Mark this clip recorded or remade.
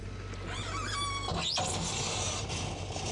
recorded